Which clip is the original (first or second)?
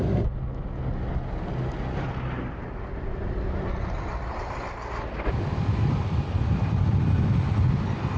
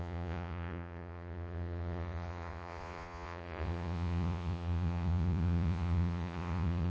first